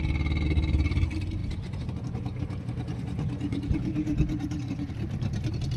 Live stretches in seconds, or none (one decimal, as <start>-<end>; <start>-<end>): 0.0-1.4; 4.9-5.8